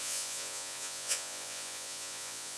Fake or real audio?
fake